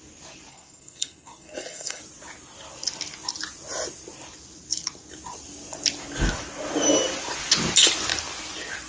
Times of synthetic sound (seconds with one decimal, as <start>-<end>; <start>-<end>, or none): 0.5-2.0